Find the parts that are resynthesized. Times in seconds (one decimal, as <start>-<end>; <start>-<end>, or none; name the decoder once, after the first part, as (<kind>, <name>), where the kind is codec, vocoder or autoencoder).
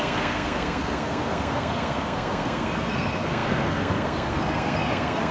0.0-5.3 (codec, SNAC)